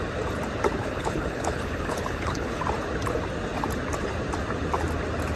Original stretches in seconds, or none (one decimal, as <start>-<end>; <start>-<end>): 0.0-0.8; 2.6-5.4